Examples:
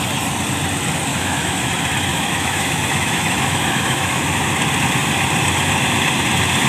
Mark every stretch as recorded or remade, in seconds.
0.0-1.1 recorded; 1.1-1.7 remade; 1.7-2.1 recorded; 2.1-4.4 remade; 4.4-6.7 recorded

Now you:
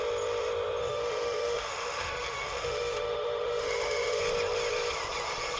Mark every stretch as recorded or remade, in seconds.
0.0-0.8 recorded; 0.8-4.2 remade; 4.2-5.6 recorded